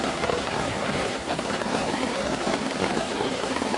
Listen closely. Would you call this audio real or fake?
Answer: fake